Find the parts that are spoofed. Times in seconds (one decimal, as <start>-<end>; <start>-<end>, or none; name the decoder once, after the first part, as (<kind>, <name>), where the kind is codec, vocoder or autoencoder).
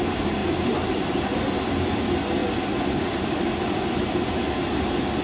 0.4-2.0 (vocoder, BigVGAN v2); 2.4-4.4